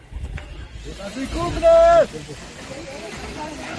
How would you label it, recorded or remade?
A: recorded